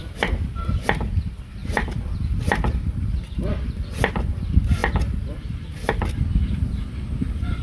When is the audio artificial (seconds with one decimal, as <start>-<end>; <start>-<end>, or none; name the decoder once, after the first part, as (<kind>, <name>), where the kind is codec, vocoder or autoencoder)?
0.0-7.6 (vocoder, BigVGAN v2)